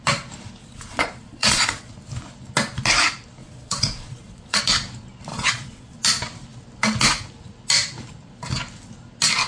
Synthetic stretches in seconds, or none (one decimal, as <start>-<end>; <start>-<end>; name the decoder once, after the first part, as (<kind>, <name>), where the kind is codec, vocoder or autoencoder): 0.6-1.9 (vocoder, Vocos); 3.4-4.6; 5.3-6.0